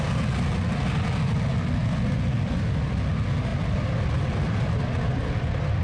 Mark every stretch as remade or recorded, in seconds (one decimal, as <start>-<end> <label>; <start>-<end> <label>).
0.0-5.8 recorded